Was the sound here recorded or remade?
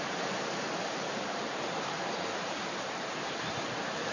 remade